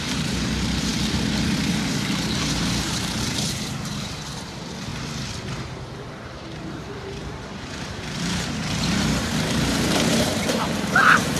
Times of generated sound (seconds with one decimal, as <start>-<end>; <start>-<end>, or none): 0.0-11.4